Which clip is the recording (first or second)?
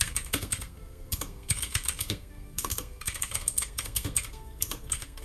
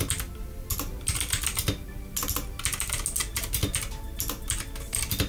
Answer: second